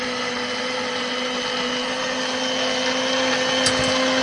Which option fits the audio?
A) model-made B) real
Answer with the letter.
B